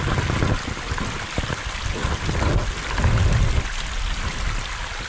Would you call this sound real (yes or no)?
yes